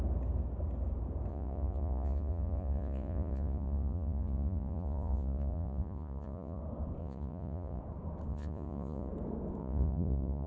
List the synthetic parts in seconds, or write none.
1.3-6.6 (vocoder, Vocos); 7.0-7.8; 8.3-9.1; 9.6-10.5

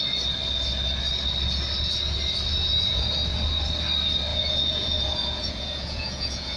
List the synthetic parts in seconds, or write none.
2.5-3.0 (vocoder, Vocos); 4.3-6.6